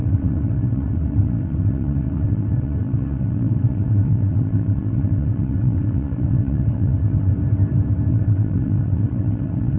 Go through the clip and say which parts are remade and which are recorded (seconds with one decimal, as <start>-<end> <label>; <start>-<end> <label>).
0.0-7.3 remade; 7.3-8.1 recorded; 8.1-9.8 remade